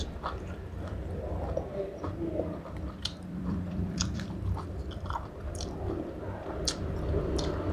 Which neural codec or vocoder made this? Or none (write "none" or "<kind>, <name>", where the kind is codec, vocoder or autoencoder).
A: vocoder, BigVGAN v2